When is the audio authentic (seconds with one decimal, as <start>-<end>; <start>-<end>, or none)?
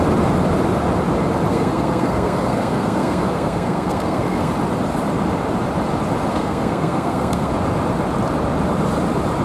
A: 0.0-1.5; 4.5-6.3; 7.5-9.4